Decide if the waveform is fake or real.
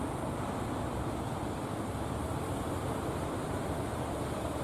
real